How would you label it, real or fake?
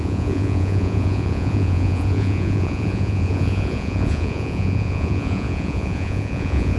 fake